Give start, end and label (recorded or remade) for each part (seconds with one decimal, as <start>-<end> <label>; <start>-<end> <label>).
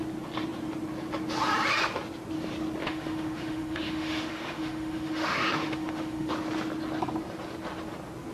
0.0-2.8 recorded; 2.8-6.3 remade; 6.3-8.3 recorded